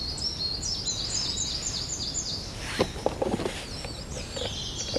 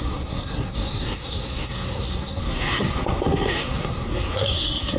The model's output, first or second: second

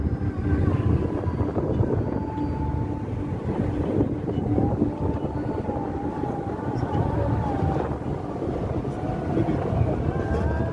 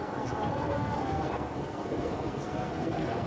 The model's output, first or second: second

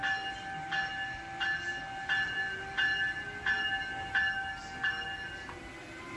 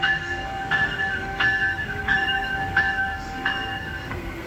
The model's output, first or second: second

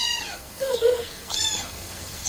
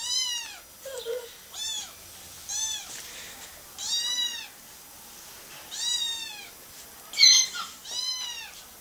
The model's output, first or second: first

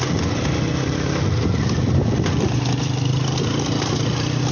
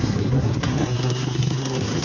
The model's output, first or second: second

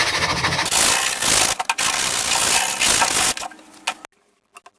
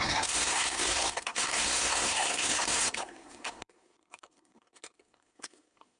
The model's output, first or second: second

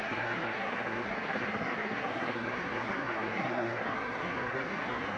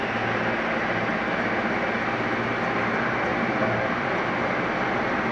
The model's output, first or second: first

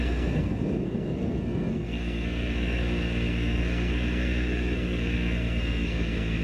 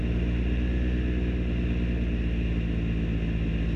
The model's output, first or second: first